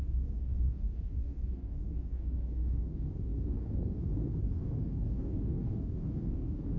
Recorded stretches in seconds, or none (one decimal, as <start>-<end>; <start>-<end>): none